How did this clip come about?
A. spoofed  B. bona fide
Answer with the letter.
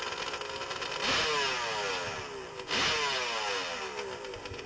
B